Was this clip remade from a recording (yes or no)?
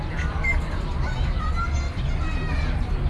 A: no